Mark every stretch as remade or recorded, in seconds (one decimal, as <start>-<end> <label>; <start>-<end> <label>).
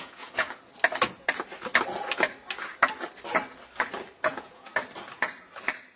0.0-0.7 remade; 0.7-4.3 recorded; 4.3-4.7 remade; 4.7-6.0 recorded